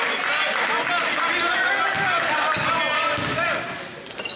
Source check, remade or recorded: recorded